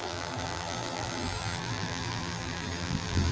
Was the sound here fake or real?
fake